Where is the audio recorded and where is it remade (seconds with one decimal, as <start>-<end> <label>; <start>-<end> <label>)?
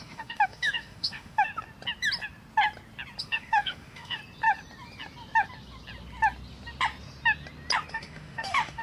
0.0-1.5 remade; 1.5-3.2 recorded; 3.2-4.2 remade; 4.2-7.9 recorded; 7.9-8.8 remade